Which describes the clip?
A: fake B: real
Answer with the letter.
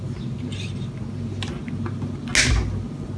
B